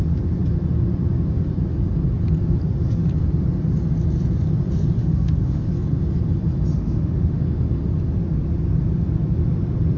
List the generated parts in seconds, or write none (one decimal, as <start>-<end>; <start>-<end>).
5.0-5.6; 6.7-7.4